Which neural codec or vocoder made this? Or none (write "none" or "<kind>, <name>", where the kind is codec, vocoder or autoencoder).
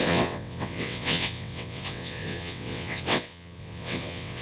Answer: vocoder, WaveNeXt